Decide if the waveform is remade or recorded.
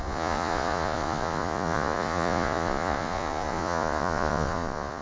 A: remade